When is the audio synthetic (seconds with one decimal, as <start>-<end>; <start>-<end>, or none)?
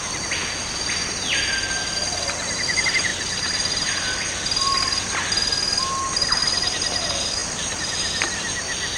none